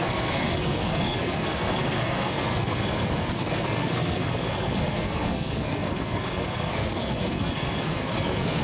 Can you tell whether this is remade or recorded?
remade